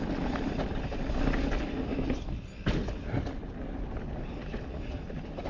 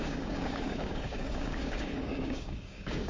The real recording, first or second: first